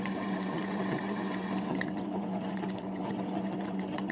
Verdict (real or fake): fake